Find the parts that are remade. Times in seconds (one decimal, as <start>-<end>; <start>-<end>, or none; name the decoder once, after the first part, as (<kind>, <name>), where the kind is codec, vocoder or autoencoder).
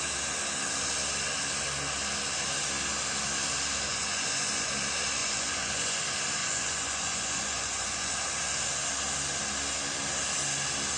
3.9-4.7 (vocoder, Vocos); 5.2-6.0; 6.4-8.1